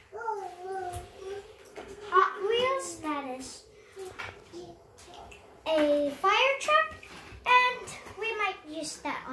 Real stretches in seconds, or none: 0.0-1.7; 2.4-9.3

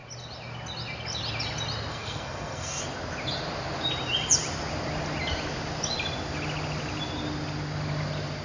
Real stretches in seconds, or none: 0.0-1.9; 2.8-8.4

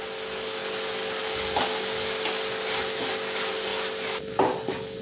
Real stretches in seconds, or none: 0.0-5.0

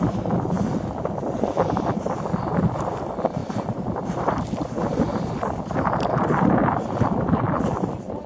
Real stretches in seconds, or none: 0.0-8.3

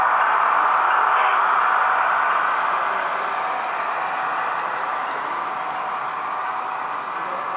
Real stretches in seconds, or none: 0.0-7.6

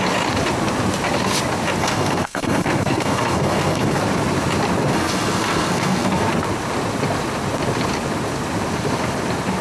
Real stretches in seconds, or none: 0.0-1.8; 4.0-4.9; 6.3-9.6